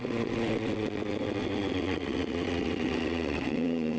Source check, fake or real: fake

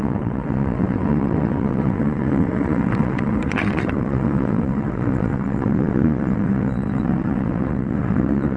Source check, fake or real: fake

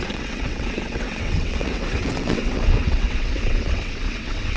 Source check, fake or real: fake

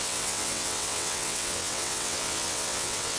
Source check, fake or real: fake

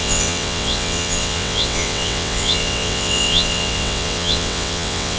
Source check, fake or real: fake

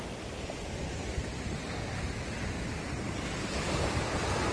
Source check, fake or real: real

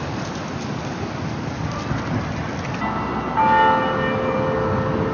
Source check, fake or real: real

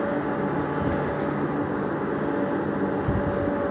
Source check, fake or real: real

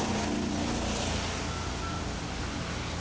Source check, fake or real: real